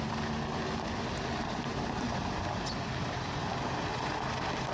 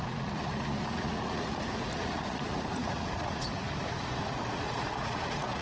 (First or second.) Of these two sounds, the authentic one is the first